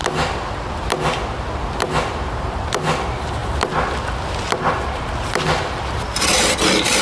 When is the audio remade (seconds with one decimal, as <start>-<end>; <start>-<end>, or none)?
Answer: none